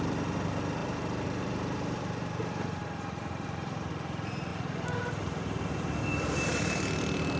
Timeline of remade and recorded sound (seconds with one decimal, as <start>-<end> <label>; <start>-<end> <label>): 0.0-0.8 recorded; 0.8-3.9 remade; 3.9-4.5 recorded; 4.5-6.8 remade; 6.8-7.4 recorded